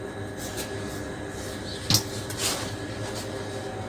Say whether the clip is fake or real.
real